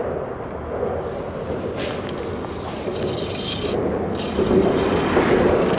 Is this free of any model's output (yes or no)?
yes